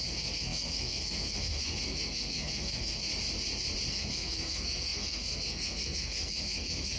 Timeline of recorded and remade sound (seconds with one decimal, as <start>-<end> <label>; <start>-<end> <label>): 0.0-3.1 remade; 3.1-3.9 recorded; 3.9-7.0 remade